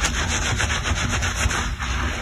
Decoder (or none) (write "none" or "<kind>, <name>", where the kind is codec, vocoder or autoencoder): none